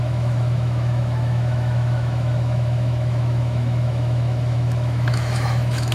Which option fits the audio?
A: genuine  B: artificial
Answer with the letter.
B